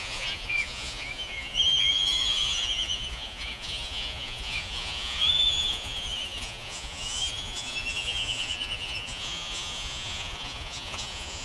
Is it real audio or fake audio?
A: fake